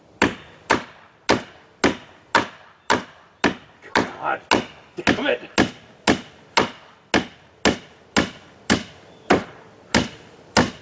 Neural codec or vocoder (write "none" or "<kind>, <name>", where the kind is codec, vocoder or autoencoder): none